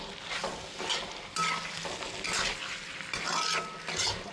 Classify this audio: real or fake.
real